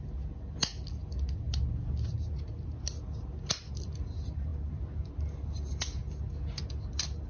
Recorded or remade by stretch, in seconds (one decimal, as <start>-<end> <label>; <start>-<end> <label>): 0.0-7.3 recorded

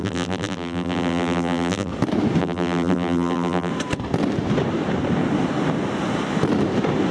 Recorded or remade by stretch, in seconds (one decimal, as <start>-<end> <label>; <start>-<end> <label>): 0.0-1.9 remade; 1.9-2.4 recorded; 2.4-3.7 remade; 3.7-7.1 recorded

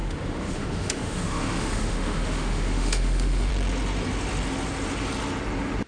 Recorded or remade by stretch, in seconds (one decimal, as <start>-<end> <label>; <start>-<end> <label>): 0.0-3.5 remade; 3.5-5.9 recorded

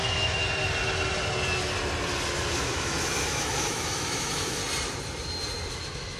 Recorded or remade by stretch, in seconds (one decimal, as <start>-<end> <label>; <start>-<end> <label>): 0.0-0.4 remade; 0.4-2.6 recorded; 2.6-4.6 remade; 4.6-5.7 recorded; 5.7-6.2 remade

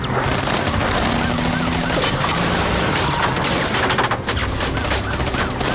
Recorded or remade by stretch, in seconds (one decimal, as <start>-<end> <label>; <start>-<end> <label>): 0.0-5.7 recorded

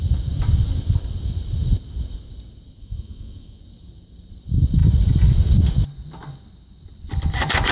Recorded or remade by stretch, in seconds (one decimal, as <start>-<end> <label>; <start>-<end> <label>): 0.0-2.8 recorded; 2.8-3.6 remade; 3.6-7.7 recorded

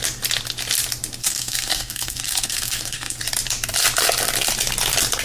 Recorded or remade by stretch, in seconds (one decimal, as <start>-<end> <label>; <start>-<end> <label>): 0.0-1.2 recorded; 1.2-3.2 remade; 3.2-5.2 recorded

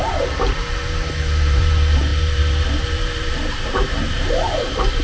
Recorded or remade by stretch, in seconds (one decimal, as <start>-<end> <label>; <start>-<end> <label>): 0.0-5.0 remade